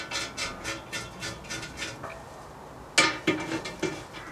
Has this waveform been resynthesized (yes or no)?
no